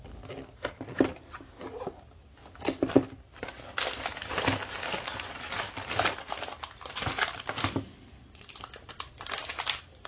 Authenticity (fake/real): real